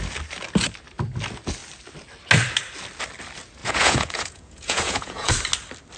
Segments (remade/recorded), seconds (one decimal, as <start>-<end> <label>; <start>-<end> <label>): 0.0-3.6 recorded; 3.6-5.3 remade; 5.3-6.0 recorded